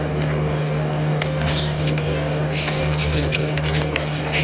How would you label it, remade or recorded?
remade